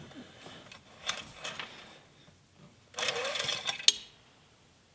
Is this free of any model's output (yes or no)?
yes